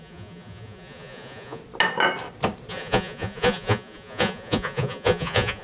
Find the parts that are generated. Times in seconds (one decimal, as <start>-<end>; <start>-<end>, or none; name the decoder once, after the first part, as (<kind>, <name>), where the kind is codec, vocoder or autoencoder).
0.0-1.6 (vocoder, Vocos); 2.7-5.6